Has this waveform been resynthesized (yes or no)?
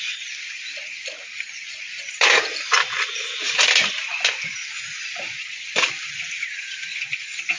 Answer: no